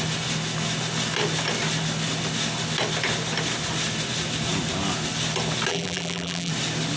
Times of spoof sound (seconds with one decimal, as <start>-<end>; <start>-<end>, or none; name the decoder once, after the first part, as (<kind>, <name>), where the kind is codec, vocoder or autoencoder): 5.7-6.5 (vocoder, BigVGAN v2)